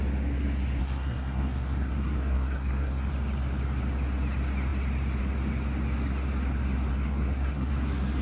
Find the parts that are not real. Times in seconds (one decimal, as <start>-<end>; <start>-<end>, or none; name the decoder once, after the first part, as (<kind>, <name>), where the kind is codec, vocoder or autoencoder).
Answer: 0.8-3.1 (codec, SNAC); 6.9-7.7